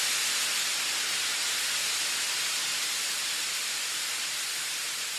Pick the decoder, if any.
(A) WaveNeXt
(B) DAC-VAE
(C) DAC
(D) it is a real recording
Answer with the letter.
D